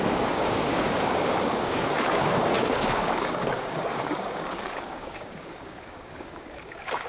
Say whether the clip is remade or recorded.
remade